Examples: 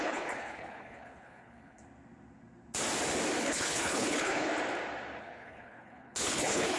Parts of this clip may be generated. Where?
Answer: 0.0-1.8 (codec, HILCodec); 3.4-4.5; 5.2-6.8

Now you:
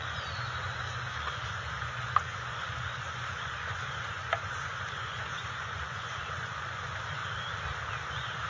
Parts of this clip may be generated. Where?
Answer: 0.0-7.2 (vocoder, Vocos); 8.1-8.5

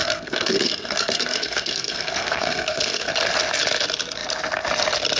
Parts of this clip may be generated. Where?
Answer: 0.0-3.1 (codec, SNAC)